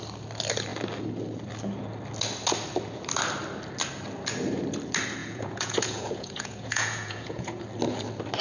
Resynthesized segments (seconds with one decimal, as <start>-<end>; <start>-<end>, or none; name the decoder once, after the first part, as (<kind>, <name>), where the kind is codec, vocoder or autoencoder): 5.2-7.6 (vocoder, Vocos)